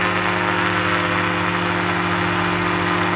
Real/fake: real